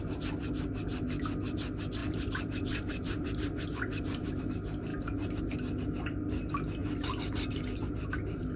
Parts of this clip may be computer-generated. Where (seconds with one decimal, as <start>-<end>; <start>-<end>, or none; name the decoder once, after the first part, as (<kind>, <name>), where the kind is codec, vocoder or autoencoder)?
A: 2.0-4.4 (vocoder, BigVGAN v2)